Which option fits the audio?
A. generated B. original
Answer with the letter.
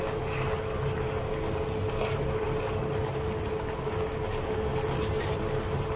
B